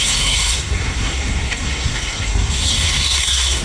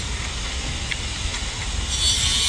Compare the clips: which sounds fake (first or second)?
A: first